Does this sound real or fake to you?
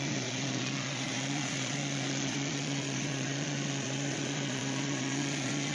fake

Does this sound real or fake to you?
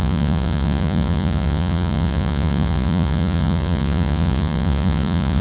fake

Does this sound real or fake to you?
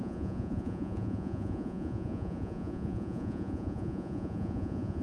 fake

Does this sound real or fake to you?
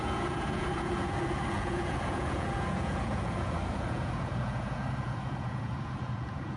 fake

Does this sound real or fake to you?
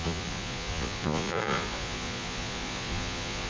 fake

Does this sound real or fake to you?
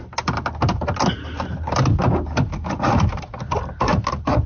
real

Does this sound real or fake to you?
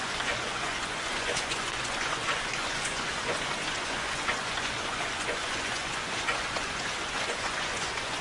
fake